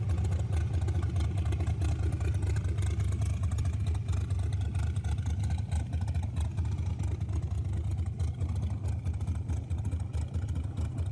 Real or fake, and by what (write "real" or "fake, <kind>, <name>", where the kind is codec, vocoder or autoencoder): real